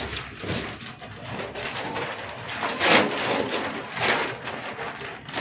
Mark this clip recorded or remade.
recorded